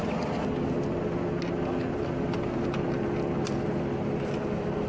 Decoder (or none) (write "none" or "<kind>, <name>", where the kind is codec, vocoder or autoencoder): none